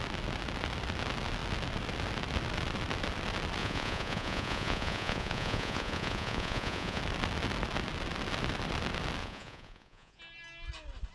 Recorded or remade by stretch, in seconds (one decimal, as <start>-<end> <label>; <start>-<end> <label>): 0.0-3.6 recorded; 3.6-7.0 remade; 7.0-9.2 recorded; 9.2-10.2 remade; 10.2-11.1 recorded